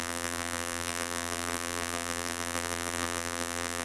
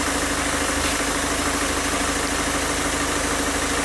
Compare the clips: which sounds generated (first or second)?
first